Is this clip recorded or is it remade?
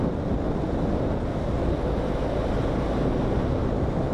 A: recorded